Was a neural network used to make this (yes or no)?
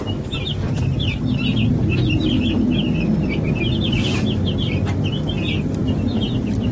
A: no